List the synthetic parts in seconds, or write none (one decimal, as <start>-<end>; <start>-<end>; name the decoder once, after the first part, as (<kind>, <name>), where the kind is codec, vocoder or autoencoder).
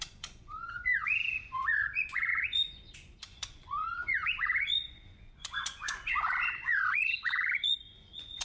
0.0-8.4 (vocoder, Vocos)